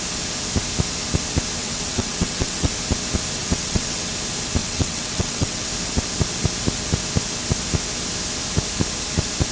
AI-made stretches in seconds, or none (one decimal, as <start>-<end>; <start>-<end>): 1.6-2.7; 3.4-4.1; 4.6-5.7